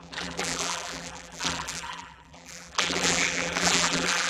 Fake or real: fake